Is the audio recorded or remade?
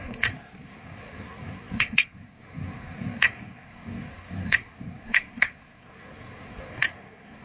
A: remade